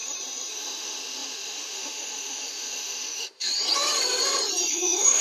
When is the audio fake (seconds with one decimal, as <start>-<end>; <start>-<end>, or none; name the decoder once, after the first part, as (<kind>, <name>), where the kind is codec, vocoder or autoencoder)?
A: 0.5-3.5 (autoencoder, DAC-VAE); 4.7-5.2